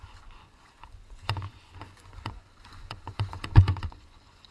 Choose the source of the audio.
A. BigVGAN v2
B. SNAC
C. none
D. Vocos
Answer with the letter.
D